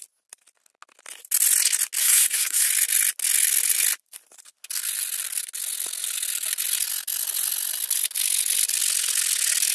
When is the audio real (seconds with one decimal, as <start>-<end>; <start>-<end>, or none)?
0.0-2.0; 2.7-9.7